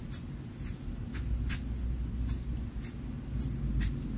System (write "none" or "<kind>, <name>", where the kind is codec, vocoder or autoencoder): none